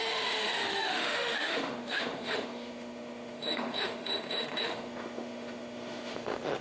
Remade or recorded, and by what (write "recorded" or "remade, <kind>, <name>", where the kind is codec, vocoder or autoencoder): remade, autoencoder, DAC-VAE